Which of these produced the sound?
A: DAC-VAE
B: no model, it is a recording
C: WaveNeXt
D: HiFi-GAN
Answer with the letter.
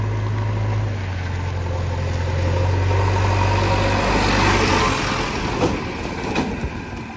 B